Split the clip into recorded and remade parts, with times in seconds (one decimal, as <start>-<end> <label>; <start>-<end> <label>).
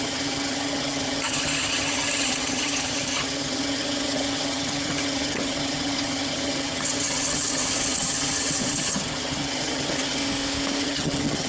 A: 0.0-10.2 remade; 10.2-10.8 recorded; 10.8-11.5 remade